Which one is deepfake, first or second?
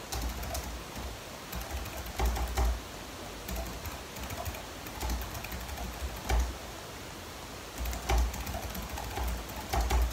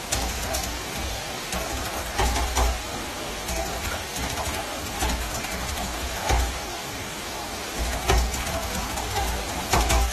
second